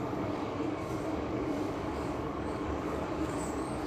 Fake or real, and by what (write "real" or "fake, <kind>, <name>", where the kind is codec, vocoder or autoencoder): fake, codec, DAC